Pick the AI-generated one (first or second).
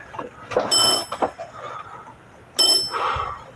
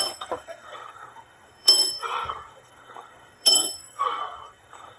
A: second